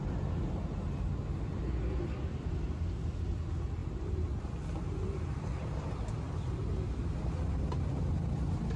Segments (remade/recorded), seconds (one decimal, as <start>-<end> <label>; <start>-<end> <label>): 0.0-3.8 recorded; 3.8-5.6 remade; 5.6-8.8 recorded